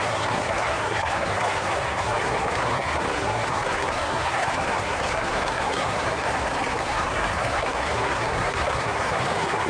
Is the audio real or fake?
fake